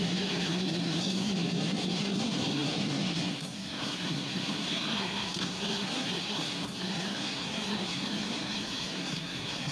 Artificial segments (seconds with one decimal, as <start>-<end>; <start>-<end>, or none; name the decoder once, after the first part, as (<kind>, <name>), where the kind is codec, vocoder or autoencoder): 0.0-9.7 (codec, SNAC)